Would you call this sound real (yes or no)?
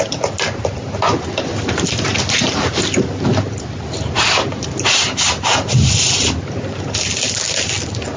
yes